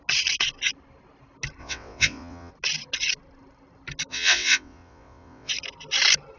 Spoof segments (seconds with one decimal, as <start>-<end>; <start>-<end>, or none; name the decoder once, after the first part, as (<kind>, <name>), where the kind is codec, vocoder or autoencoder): 1.6-2.5 (vocoder, WaveNeXt); 4.1-5.5

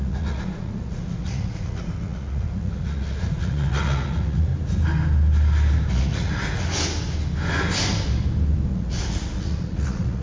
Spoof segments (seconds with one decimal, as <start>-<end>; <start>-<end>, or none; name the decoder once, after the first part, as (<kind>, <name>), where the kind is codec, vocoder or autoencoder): 0.0-4.5 (vocoder, Vocos); 5.9-6.4; 8.7-10.2